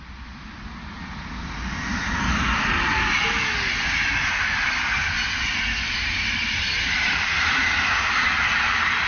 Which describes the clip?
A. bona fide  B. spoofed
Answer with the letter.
A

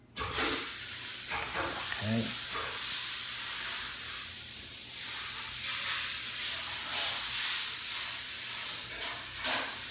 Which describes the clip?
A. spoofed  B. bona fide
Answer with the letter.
B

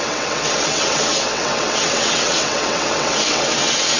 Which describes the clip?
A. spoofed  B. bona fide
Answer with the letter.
A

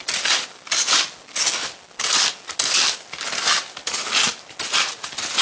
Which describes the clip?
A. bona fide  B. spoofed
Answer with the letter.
A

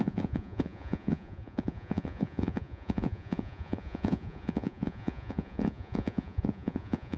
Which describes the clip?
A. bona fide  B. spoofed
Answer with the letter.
B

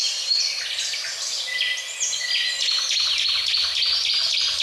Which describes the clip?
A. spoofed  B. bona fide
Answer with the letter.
B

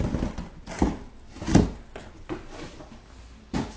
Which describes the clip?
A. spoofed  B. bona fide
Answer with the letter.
B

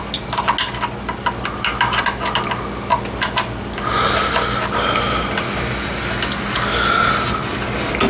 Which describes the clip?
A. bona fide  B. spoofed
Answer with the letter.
A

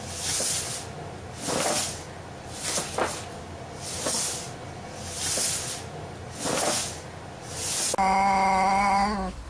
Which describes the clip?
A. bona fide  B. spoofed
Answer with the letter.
A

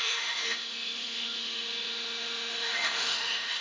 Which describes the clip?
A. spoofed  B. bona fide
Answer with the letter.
A